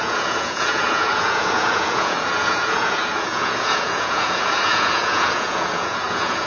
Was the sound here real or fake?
fake